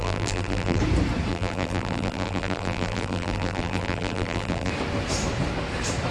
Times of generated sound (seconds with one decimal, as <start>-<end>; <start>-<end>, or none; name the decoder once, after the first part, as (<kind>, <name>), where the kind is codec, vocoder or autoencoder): 0.0-0.8 (vocoder, BigVGAN v2); 1.3-4.7